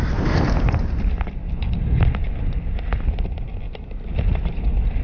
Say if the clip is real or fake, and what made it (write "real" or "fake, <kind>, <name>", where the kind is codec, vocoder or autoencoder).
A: real